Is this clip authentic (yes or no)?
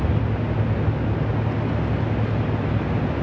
yes